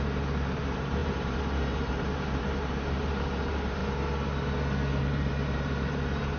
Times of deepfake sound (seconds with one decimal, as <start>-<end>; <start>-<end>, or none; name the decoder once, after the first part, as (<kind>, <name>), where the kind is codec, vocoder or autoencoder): 0.0-3.8 (vocoder, BigVGAN v2); 5.0-6.4